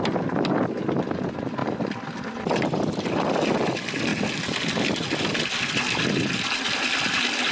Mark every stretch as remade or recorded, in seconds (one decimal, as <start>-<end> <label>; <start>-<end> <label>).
0.0-7.5 recorded